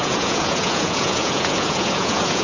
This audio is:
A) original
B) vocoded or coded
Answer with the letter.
B